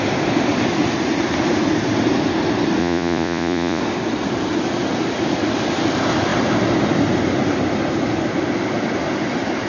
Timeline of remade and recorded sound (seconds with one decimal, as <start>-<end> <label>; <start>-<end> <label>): 0.0-2.8 recorded; 2.8-3.8 remade; 3.8-9.7 recorded